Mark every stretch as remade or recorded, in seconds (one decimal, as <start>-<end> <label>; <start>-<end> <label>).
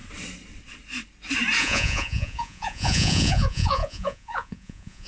0.0-1.6 recorded; 1.6-5.1 remade